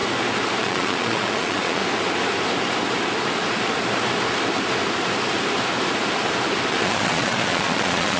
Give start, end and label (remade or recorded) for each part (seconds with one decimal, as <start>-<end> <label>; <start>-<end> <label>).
0.0-0.6 recorded; 0.6-1.8 remade; 1.8-6.7 recorded; 6.7-8.2 remade